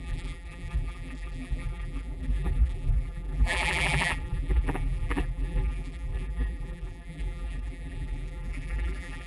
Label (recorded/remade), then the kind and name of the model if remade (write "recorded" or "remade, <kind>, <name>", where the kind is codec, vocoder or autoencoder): remade, vocoder, BigVGAN v2